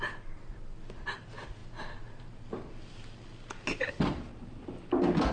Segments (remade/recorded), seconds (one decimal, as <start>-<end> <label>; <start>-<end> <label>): 0.0-1.6 remade; 1.6-3.9 recorded; 3.9-4.3 remade; 4.3-5.3 recorded